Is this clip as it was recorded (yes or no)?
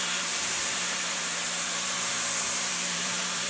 no